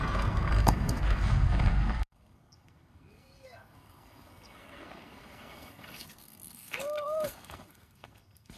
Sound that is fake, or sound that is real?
fake